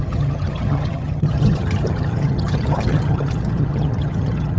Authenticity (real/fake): fake